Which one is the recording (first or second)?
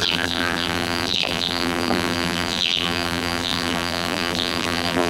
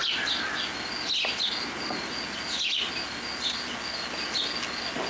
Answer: second